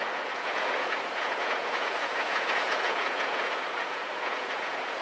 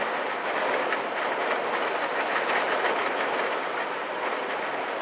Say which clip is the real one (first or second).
second